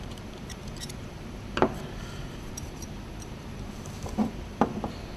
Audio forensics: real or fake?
fake